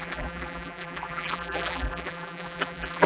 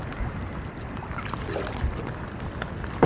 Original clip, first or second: second